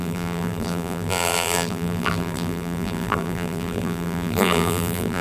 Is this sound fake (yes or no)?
yes